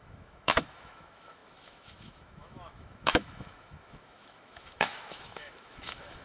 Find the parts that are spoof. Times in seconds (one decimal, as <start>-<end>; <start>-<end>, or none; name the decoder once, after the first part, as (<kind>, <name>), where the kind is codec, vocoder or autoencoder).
0.0-6.2 (autoencoder, DAC-VAE)